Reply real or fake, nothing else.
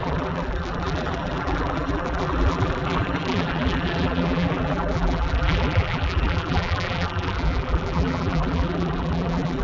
fake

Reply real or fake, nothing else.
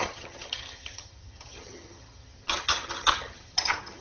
fake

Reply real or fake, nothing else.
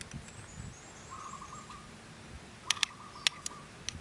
real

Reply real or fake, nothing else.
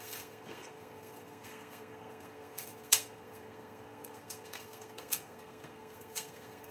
fake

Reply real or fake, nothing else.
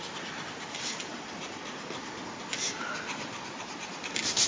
real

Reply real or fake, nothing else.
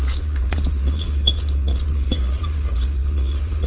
fake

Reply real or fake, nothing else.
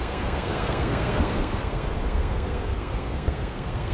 fake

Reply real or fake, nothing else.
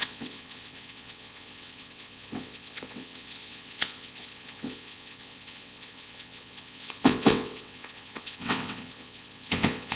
fake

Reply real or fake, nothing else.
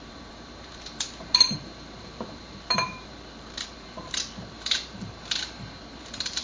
fake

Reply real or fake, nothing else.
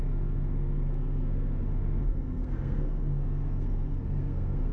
fake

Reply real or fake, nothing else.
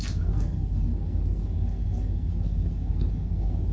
fake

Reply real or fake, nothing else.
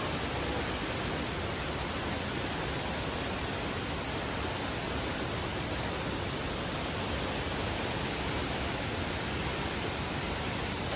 real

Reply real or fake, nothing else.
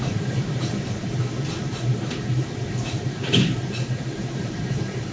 fake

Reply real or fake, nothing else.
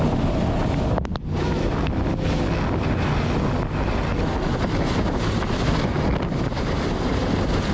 real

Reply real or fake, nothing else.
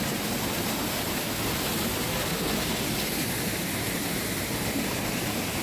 real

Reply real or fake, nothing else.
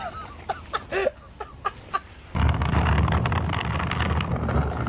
real